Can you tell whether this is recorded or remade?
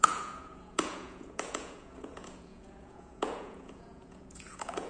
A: remade